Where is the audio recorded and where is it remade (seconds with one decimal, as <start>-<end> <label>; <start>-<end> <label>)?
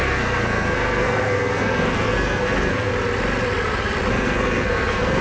0.0-2.9 remade; 2.9-4.1 recorded; 4.1-5.2 remade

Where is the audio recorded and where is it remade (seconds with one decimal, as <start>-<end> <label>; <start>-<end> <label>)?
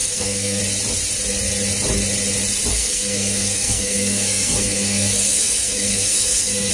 0.0-0.6 remade; 0.6-2.7 recorded; 2.7-6.7 remade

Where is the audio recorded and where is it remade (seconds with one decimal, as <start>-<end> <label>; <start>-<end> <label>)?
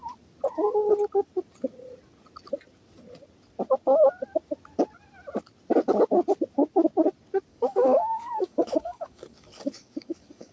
0.0-7.5 recorded; 7.5-10.5 remade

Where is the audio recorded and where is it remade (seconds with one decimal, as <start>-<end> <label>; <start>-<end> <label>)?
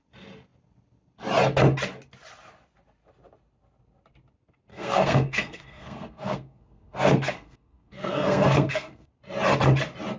0.0-4.7 recorded; 4.7-9.1 remade; 9.1-10.2 recorded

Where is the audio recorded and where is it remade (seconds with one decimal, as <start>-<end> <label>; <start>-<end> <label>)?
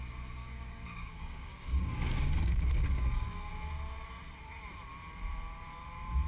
0.0-0.4 recorded; 0.4-3.5 remade; 3.5-6.3 recorded